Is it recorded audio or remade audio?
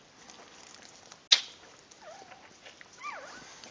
recorded